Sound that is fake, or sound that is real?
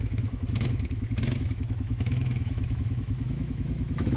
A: fake